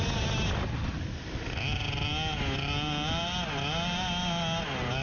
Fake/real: real